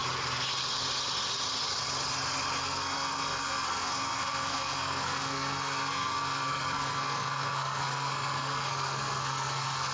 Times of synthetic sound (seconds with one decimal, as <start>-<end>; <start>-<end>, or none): 2.6-9.9

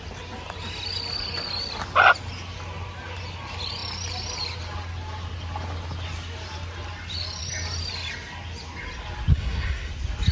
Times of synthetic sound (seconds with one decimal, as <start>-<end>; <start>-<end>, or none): 9.3-9.9